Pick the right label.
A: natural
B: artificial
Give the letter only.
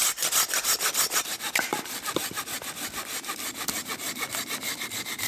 A